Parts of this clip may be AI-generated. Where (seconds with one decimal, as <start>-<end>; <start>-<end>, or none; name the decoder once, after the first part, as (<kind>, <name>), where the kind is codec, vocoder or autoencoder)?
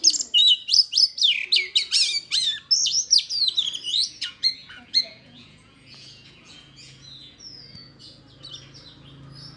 3.9-8.2 (vocoder, Vocos)